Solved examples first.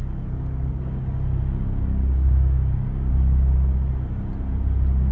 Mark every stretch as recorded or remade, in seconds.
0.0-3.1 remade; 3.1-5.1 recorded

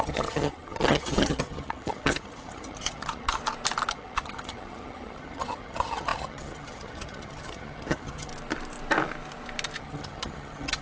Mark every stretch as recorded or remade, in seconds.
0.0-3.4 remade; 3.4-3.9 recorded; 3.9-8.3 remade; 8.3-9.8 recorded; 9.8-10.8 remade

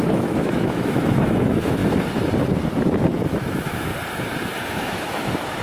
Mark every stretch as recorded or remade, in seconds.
0.0-1.8 remade; 1.8-3.3 recorded; 3.3-3.9 remade; 3.9-4.7 recorded; 4.7-5.6 remade

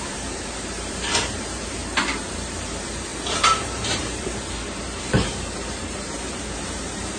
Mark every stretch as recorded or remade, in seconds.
0.0-1.8 remade; 1.8-2.3 recorded; 2.3-7.2 remade

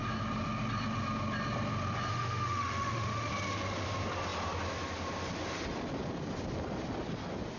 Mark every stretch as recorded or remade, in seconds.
0.0-2.1 recorded; 2.1-3.3 remade; 3.3-7.6 recorded